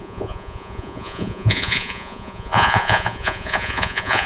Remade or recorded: remade